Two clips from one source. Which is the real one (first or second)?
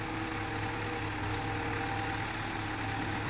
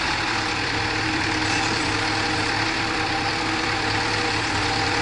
first